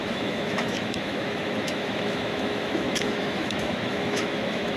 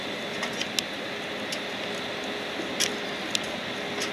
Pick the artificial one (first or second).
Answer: first